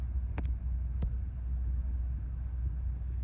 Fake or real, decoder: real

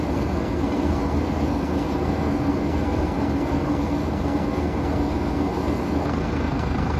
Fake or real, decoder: fake, codec, SNAC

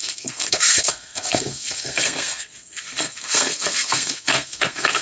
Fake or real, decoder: fake, codec, SNAC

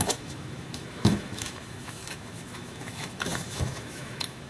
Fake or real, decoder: fake, autoencoder, DAC-VAE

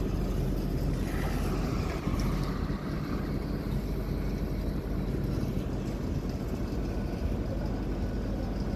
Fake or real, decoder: real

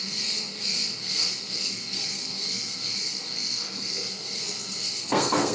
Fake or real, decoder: fake, codec, SNAC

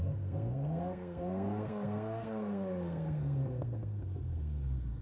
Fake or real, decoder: fake, codec, SNAC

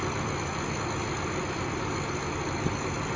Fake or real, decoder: real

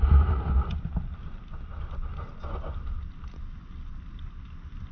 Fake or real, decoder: real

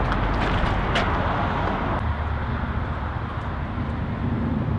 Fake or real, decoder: real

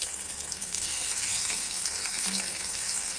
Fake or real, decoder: fake, codec, SNAC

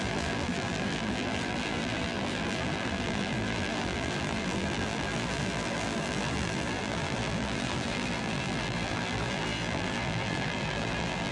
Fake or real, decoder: fake, vocoder, BigVGAN v2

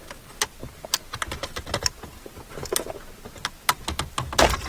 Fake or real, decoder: real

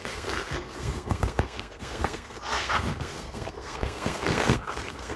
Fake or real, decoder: fake, codec, SNAC